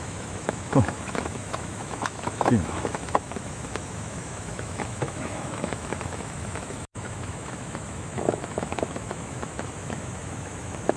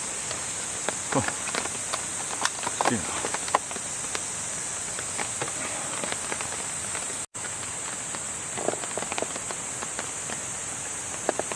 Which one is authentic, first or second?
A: second